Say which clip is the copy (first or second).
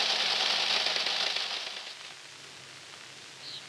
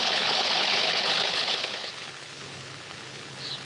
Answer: second